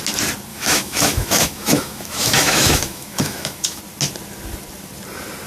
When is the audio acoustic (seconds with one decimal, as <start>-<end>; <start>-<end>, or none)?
0.0-0.5; 3.8-5.5

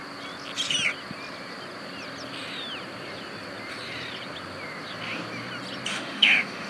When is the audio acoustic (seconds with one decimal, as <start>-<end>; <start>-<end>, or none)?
0.0-5.9